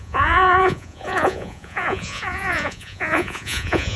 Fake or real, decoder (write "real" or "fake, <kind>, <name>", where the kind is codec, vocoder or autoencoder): fake, vocoder, Vocos